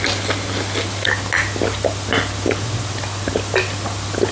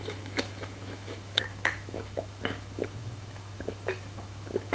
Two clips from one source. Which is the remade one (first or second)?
second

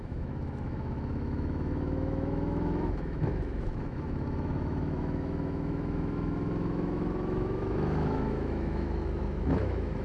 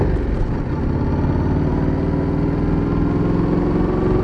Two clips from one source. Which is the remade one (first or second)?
first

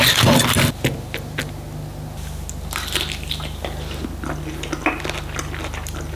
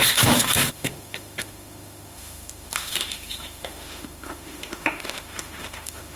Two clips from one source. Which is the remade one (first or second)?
second